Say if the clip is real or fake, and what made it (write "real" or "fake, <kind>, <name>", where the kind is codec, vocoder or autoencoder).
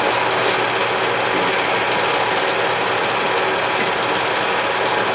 real